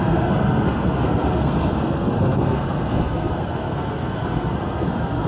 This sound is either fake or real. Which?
fake